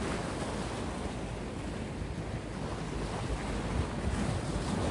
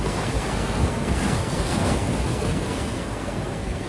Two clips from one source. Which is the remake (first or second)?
second